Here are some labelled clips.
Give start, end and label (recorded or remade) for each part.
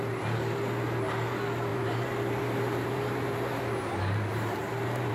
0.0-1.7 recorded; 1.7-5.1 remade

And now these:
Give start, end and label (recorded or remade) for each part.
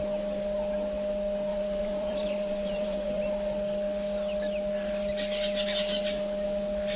0.0-1.5 recorded; 1.5-3.2 remade; 3.2-7.0 recorded